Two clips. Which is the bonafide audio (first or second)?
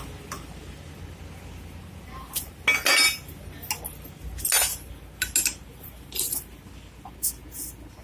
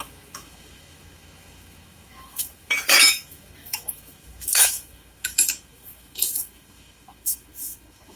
first